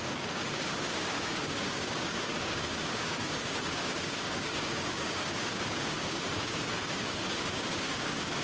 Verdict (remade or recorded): remade